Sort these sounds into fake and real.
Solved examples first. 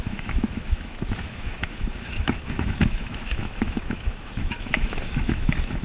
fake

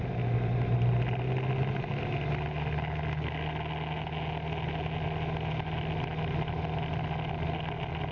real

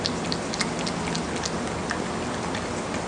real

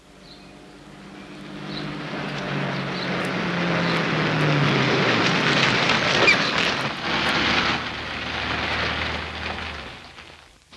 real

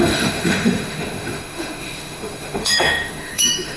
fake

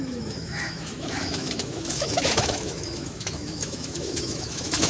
fake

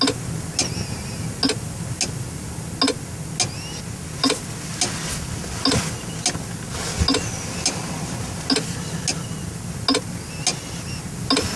real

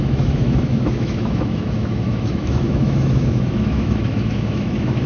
fake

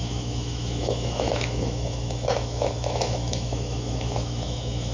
fake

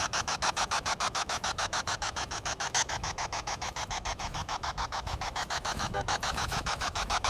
fake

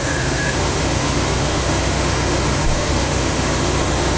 fake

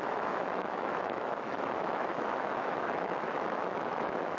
fake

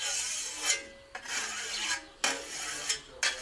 real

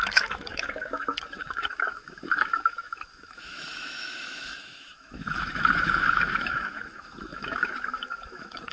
fake